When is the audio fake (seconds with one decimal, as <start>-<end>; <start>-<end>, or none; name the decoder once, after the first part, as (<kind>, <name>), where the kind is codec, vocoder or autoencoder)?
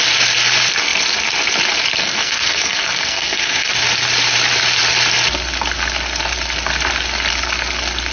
2.0-3.7 (codec, SNAC)